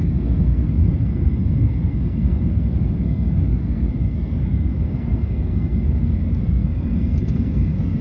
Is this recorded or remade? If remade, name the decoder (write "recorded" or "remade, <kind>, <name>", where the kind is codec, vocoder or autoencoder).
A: remade, codec, SNAC